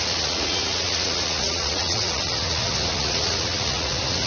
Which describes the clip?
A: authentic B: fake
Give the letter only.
B